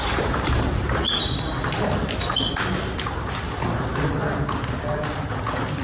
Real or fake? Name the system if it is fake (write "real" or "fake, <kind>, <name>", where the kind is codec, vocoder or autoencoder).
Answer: real